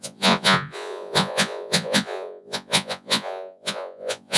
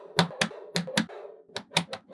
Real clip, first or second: second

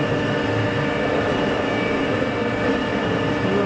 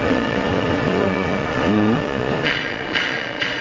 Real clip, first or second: first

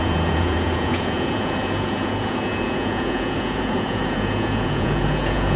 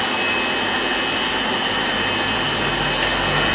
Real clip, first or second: second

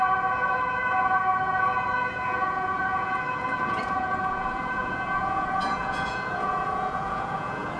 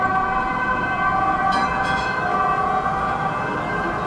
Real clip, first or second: second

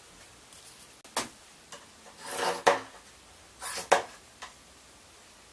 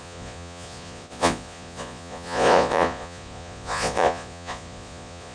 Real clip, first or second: first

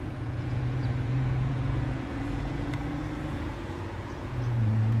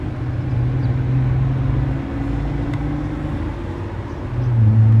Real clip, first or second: second